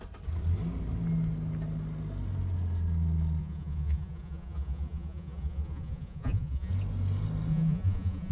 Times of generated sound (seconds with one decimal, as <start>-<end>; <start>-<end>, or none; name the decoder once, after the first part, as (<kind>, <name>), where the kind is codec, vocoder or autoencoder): 3.4-6.7 (vocoder, Vocos); 7.5-8.3